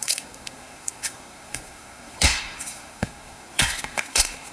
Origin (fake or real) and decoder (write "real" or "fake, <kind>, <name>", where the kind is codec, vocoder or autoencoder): fake, codec, SNAC